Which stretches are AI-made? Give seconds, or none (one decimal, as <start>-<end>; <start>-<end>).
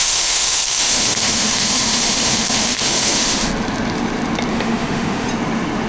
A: 0.0-3.5; 4.5-5.3